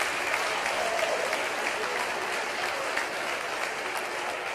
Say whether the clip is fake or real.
fake